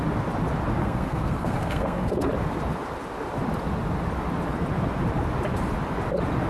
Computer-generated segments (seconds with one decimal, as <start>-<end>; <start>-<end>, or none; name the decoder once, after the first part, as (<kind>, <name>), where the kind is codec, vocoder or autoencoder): 0.8-2.3 (codec, SNAC)